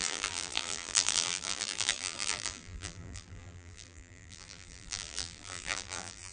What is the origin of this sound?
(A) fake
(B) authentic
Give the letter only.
A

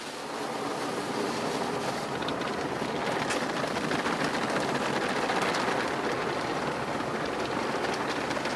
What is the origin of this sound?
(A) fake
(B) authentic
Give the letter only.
B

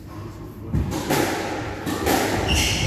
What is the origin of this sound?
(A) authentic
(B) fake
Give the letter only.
A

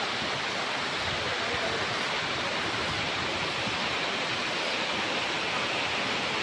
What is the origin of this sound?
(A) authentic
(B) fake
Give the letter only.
A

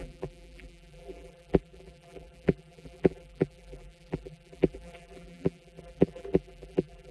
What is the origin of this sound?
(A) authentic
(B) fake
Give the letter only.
B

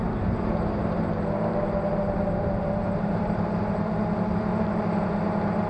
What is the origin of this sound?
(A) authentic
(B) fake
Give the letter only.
B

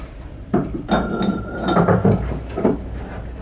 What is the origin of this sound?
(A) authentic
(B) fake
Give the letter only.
B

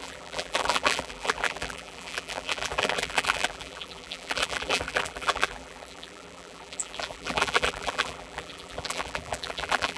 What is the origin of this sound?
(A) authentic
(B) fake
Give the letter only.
B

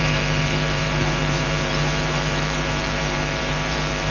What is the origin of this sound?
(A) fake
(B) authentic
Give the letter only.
A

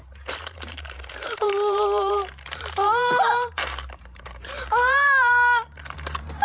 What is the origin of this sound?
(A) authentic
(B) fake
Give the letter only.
B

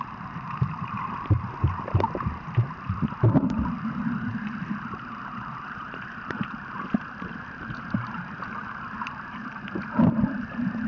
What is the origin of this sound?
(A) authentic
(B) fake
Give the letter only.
B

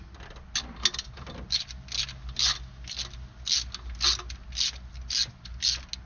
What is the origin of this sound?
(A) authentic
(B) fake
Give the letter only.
A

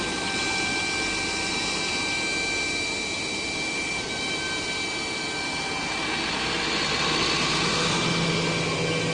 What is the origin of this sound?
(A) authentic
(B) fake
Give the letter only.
A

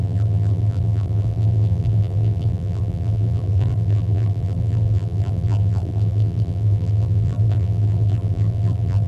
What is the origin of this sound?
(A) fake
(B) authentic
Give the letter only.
A